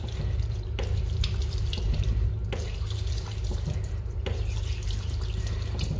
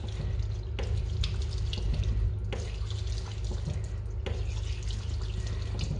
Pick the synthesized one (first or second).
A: first